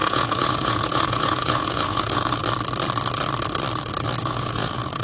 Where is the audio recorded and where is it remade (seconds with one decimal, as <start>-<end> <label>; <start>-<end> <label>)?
0.0-2.4 remade; 2.4-4.2 recorded; 4.2-5.0 remade